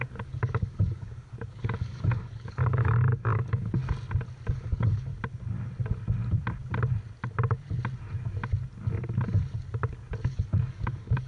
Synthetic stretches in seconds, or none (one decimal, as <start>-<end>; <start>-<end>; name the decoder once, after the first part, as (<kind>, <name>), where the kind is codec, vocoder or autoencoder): 0.0-3.8 (codec, DAC); 4.5-5.1; 10.2-11.3

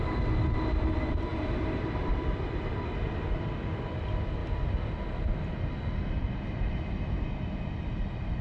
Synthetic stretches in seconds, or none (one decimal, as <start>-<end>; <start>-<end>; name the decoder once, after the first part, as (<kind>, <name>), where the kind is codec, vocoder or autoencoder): 1.3-2.1 (vocoder, BigVGAN v2)

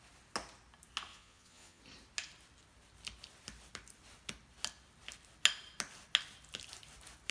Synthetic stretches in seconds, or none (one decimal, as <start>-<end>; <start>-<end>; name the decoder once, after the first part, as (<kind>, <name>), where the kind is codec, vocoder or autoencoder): 1.1-1.8 (vocoder, Vocos)

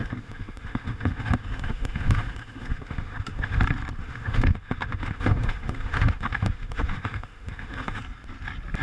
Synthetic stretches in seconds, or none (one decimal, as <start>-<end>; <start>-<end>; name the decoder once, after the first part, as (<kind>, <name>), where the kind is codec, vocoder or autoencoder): 0.0-3.6 (autoencoder, DAC-VAE); 4.0-8.0

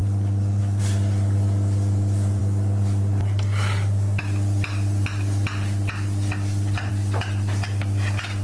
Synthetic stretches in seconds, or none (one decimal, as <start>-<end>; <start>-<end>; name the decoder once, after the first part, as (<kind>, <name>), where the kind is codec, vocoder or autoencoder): none

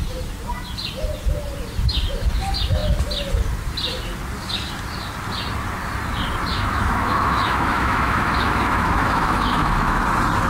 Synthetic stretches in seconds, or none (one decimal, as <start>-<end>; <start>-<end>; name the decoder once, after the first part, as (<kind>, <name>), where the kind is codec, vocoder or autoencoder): 6.5-10.0 (autoencoder, DAC-VAE)